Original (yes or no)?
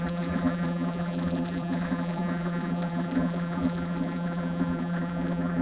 no